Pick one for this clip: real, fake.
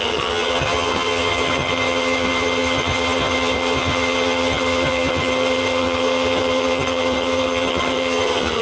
fake